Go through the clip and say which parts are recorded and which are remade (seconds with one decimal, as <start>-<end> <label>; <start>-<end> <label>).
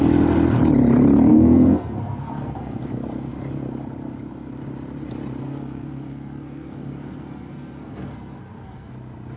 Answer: 0.0-1.3 recorded; 1.3-2.8 remade; 2.8-5.4 recorded; 5.4-8.9 remade; 8.9-9.4 recorded